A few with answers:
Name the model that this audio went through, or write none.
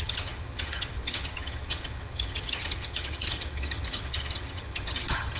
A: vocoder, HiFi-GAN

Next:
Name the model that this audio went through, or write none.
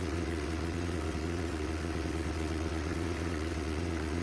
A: vocoder, WaveNeXt